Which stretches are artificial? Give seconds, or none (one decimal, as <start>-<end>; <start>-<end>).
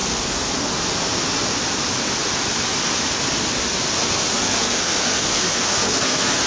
0.0-0.5; 4.0-6.5